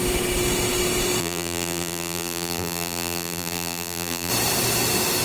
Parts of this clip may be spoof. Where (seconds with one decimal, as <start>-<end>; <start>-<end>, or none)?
1.2-4.3